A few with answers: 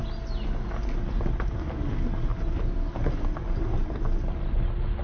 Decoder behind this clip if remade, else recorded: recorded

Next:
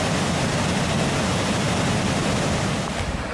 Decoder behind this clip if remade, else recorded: recorded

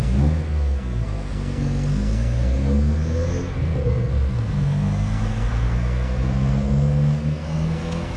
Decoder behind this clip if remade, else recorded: remade, codec, SNAC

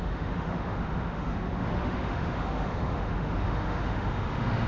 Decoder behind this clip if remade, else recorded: remade, autoencoder, DAC-VAE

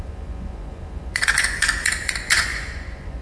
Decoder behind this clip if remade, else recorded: remade, vocoder, Vocos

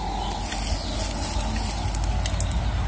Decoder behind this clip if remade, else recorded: recorded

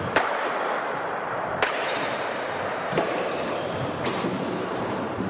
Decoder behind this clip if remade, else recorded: remade, vocoder, BigVGAN v2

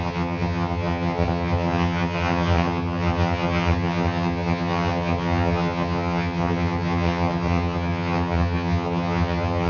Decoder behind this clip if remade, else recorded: remade, vocoder, HiFi-GAN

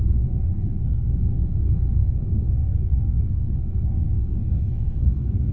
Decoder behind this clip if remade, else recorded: remade, codec, SNAC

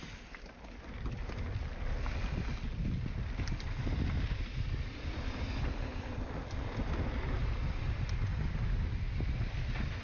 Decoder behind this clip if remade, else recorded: recorded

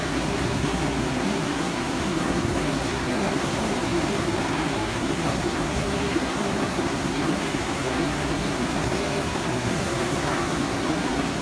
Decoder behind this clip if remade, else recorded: remade, codec, SNAC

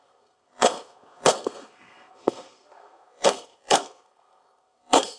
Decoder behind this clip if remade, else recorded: remade, codec, SNAC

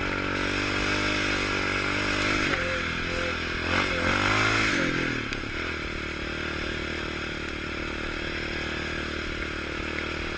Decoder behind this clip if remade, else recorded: recorded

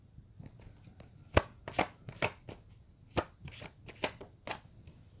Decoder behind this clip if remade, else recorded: recorded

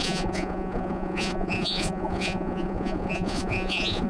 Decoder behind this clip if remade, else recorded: remade, vocoder, Vocos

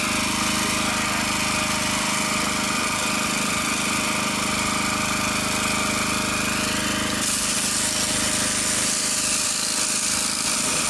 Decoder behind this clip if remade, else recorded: recorded